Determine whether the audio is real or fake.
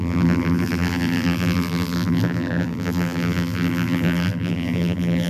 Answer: fake